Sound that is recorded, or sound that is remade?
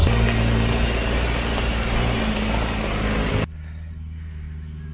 recorded